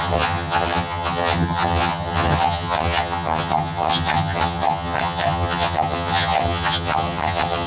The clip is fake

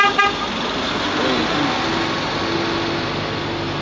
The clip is real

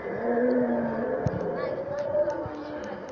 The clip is real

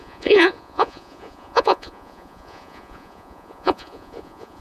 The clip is fake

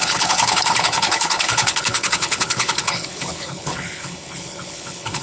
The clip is fake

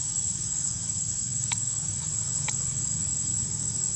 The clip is fake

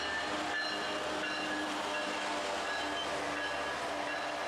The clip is real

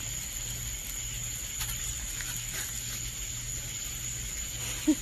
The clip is real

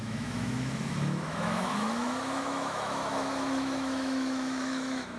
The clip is fake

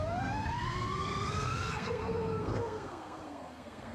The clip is fake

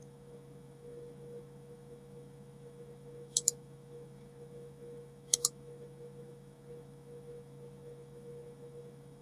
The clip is fake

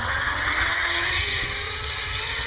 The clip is fake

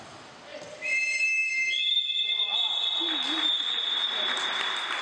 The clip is fake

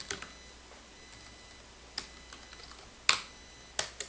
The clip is real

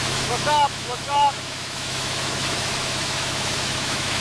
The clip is fake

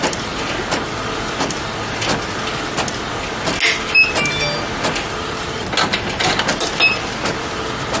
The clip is real